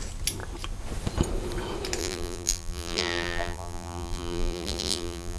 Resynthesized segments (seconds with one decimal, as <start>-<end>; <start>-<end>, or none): 2.0-5.4

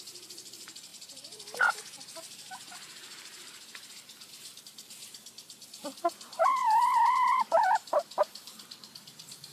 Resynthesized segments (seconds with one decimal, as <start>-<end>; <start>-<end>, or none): 0.0-9.5